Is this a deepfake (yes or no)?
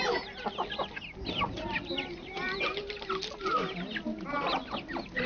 no